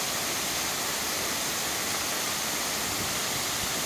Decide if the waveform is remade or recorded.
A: recorded